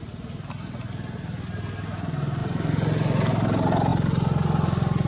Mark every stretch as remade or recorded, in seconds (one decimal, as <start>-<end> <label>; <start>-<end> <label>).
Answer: 0.0-5.1 recorded